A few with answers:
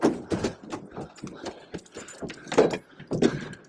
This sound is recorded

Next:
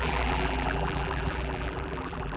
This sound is remade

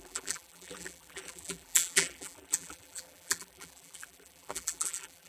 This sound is remade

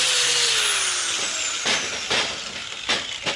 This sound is recorded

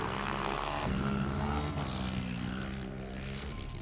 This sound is remade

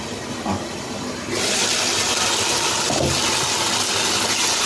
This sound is recorded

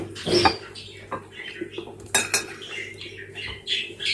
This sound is recorded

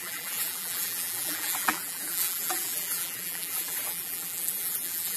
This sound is remade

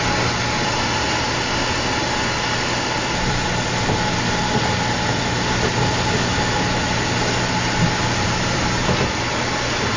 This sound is recorded